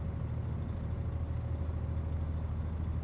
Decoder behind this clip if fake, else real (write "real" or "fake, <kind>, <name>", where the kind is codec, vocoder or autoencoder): real